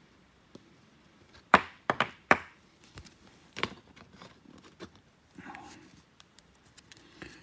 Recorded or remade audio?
remade